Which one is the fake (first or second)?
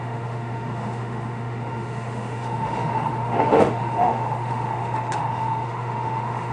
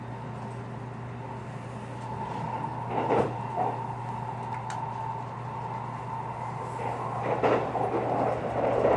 first